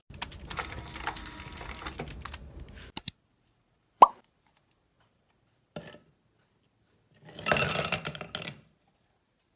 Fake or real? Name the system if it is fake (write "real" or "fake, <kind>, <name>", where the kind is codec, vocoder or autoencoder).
real